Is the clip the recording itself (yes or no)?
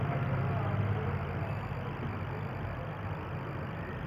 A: yes